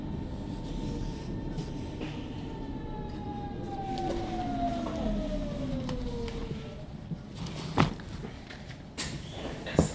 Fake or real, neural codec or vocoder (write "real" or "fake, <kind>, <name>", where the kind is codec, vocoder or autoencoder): real